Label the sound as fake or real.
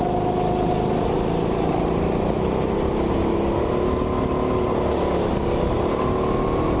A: real